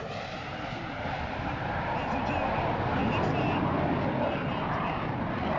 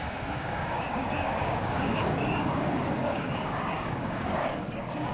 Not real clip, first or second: second